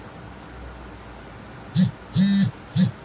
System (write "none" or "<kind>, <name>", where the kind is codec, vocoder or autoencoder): none